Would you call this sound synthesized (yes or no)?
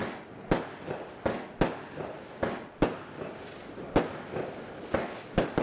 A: no